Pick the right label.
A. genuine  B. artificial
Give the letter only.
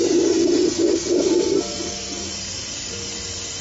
A